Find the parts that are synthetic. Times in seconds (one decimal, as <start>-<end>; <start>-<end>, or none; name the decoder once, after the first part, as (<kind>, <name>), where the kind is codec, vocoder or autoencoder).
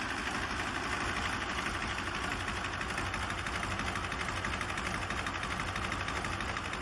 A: none